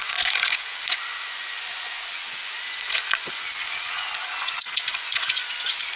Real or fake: fake